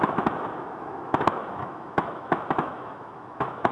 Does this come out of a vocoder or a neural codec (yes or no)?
yes